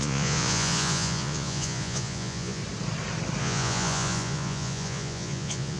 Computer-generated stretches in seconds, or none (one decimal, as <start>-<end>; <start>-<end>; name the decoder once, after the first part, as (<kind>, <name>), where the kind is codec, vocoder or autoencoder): 0.0-2.6 (vocoder, Vocos); 3.4-5.8